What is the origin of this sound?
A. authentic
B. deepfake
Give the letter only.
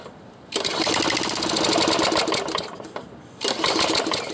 A